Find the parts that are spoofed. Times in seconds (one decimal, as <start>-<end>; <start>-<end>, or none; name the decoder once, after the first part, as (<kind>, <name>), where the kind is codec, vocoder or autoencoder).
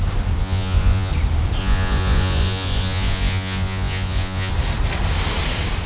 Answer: 0.4-1.1 (vocoder, Vocos); 1.6-4.5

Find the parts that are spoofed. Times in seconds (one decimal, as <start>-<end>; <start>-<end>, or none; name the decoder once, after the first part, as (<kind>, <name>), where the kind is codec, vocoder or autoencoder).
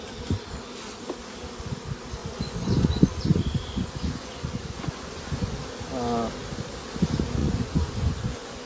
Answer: 2.2-5.6 (vocoder, Vocos); 7.4-8.7